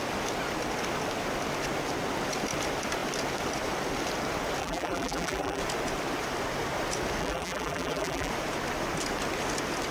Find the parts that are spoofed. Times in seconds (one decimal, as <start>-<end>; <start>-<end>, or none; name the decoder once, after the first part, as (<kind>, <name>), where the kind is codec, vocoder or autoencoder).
4.6-5.6 (vocoder, BigVGAN v2); 7.2-8.3